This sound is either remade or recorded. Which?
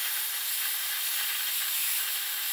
recorded